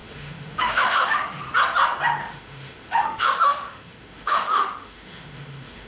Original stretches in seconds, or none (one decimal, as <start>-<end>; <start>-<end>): 1.4-2.2